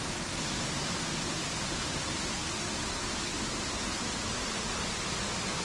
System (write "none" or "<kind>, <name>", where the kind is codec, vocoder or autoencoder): none